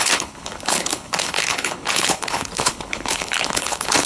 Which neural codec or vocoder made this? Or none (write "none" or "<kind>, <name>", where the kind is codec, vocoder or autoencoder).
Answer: codec, HILCodec